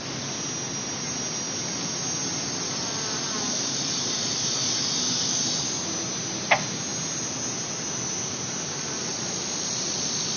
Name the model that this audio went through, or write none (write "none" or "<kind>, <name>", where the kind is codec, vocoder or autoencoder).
none